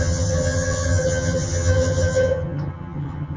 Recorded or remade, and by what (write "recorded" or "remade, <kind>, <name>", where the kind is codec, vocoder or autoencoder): remade, vocoder, HiFi-GAN